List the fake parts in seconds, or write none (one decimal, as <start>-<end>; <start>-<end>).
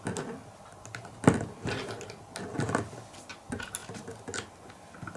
none